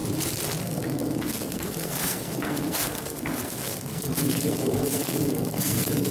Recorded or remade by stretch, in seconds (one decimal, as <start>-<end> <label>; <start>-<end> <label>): 0.0-0.6 recorded; 0.6-6.1 remade